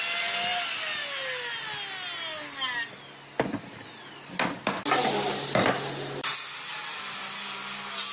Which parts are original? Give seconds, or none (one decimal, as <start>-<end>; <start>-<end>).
0.0-8.1